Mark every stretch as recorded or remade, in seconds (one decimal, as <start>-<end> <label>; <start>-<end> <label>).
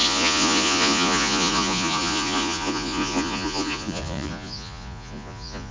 0.0-5.7 remade